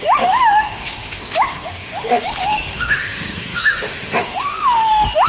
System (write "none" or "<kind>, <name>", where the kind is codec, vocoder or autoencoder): autoencoder, DAC-VAE